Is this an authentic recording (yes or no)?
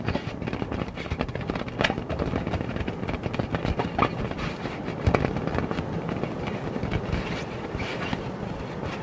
yes